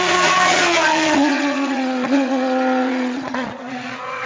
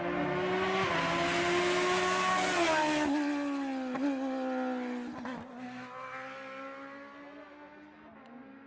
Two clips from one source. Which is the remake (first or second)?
first